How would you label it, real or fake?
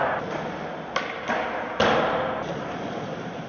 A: real